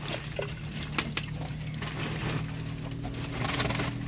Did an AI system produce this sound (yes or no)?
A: no